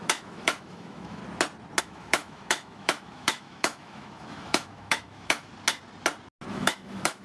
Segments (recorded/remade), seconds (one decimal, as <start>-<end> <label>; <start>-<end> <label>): 0.0-1.2 remade; 1.2-1.8 recorded; 1.8-5.5 remade; 5.5-6.5 recorded; 6.5-7.2 remade